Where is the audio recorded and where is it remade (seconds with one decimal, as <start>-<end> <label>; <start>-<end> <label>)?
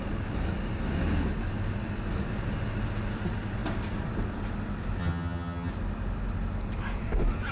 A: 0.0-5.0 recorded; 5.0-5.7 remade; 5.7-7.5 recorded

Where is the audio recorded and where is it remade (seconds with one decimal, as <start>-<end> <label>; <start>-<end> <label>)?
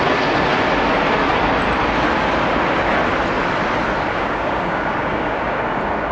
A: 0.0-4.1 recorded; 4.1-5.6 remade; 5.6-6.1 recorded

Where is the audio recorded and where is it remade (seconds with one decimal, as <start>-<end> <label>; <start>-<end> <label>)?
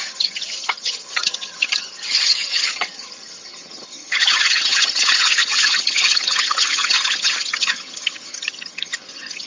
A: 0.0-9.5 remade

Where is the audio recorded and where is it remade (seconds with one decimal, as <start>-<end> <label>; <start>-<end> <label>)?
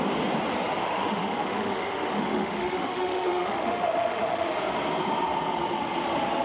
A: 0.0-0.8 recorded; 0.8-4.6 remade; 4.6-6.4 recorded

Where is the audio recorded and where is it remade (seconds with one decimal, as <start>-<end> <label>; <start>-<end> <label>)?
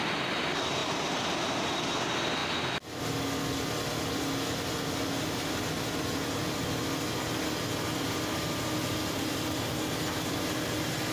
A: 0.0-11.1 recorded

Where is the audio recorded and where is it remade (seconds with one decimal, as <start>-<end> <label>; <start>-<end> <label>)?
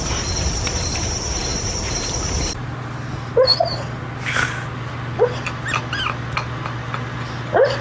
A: 0.0-1.5 recorded; 1.5-2.8 remade; 2.8-7.8 recorded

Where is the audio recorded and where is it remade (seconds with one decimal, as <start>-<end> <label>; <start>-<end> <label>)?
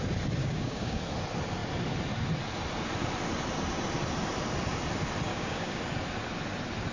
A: 0.0-0.4 recorded; 0.4-1.0 remade; 1.0-5.3 recorded; 5.3-5.8 remade; 5.8-6.9 recorded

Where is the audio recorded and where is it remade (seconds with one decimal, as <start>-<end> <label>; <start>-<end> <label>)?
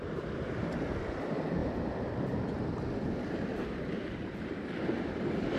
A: 0.0-5.6 recorded